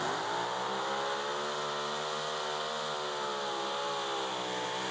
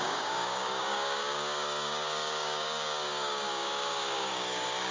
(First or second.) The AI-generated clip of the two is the second